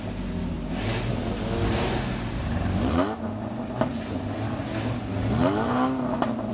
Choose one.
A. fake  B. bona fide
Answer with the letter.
B